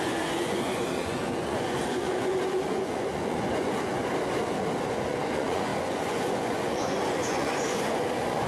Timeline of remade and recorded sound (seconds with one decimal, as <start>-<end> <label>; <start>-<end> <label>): 0.0-4.0 remade; 4.0-4.8 recorded; 4.8-8.5 remade